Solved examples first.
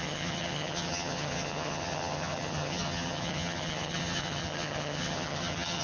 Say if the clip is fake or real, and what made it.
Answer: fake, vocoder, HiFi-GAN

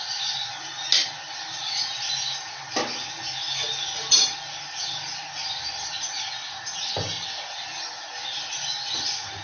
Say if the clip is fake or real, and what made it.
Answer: real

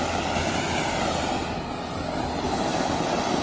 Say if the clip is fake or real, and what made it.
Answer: real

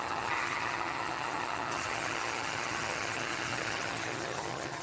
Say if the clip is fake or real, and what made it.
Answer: fake, vocoder, HiFi-GAN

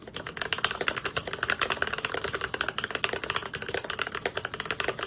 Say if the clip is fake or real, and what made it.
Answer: real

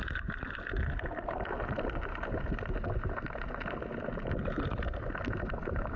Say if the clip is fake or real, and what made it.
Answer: real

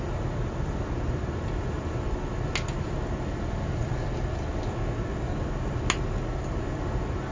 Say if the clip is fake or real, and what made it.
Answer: real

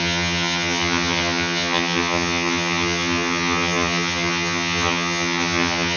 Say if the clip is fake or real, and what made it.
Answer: fake, vocoder, HiFi-GAN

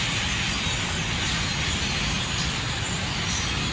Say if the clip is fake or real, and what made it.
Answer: real